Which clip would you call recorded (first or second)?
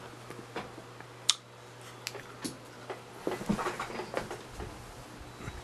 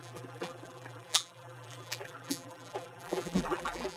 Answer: first